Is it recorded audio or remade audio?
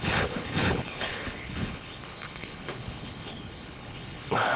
remade